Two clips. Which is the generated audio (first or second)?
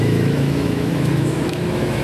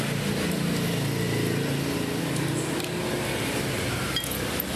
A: first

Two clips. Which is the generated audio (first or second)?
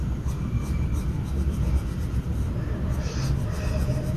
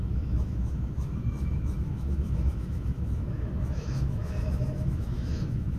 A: second